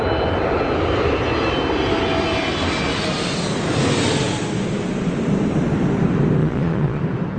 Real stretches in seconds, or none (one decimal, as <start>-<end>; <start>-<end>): 0.0-6.4; 7.0-7.4